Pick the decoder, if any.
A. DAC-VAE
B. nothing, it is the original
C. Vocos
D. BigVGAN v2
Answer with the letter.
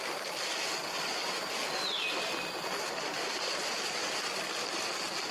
B